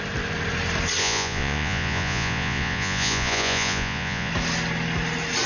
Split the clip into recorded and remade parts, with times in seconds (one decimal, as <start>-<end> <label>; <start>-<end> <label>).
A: 0.0-1.0 recorded; 1.0-4.3 remade; 4.3-5.5 recorded